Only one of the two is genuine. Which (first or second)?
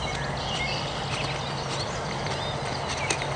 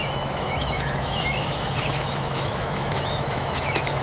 first